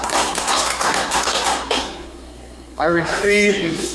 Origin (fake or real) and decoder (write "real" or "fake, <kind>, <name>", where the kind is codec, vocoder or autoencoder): fake, codec, SNAC